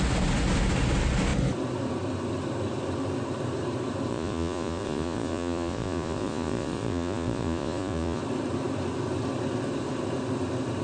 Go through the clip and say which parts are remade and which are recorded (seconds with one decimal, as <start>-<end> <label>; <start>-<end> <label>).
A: 0.0-4.1 recorded; 4.1-8.2 remade; 8.2-10.8 recorded